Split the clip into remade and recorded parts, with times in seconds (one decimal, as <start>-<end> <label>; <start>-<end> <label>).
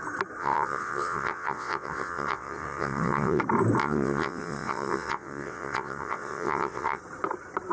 0.0-0.4 recorded; 0.4-3.4 remade; 3.4-3.8 recorded; 3.8-7.0 remade; 7.0-7.7 recorded